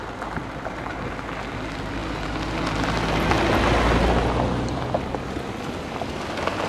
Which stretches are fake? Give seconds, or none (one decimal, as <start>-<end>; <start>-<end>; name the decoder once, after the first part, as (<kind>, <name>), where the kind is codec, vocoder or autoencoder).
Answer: none